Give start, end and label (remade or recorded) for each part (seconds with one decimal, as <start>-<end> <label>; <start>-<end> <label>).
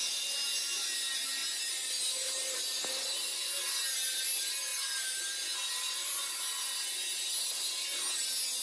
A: 0.0-8.6 recorded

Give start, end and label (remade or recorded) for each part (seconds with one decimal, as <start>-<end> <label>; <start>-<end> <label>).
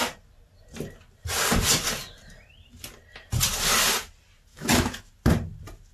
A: 0.0-4.5 recorded; 4.5-5.1 remade; 5.1-5.9 recorded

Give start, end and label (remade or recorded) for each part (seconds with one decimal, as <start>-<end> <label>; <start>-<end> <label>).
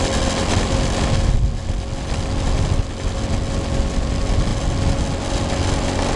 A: 0.0-6.2 recorded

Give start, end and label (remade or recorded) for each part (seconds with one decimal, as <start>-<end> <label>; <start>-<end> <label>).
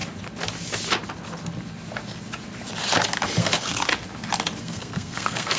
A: 0.0-3.4 recorded; 3.4-3.9 remade; 3.9-4.6 recorded; 4.6-5.6 remade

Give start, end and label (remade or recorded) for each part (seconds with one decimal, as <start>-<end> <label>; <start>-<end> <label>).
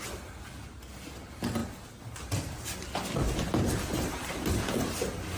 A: 0.0-5.4 recorded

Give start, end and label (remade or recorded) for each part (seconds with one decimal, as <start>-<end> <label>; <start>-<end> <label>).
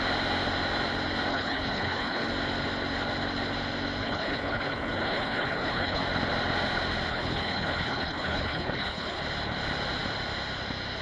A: 0.0-1.3 recorded; 1.3-2.3 remade; 2.3-4.0 recorded; 4.0-6.0 remade; 6.0-7.1 recorded; 7.1-9.2 remade; 9.2-11.0 recorded